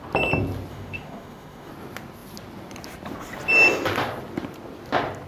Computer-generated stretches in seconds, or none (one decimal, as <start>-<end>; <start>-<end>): 0.7-1.7